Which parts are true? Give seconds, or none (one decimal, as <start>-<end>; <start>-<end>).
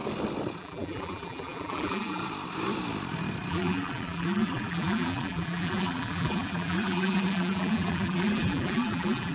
0.0-0.6; 2.2-3.5